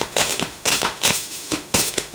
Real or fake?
fake